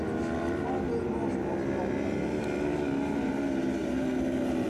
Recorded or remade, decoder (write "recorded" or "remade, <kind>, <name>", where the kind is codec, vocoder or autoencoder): recorded